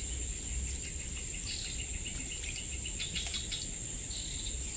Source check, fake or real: real